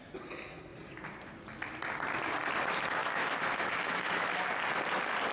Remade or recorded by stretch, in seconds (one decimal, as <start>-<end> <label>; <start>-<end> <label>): 0.0-3.0 recorded; 3.0-4.4 remade; 4.4-5.3 recorded